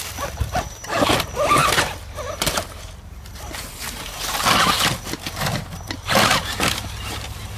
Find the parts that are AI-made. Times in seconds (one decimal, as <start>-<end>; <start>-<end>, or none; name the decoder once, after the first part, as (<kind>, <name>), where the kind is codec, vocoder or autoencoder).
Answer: 1.6-4.1 (vocoder, BigVGAN v2)